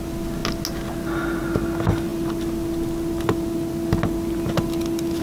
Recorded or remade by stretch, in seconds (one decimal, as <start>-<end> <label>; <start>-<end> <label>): 0.0-5.2 recorded